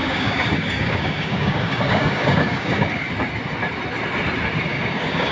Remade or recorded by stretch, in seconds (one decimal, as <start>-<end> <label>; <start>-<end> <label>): 0.0-3.1 remade; 3.1-4.7 recorded; 4.7-5.3 remade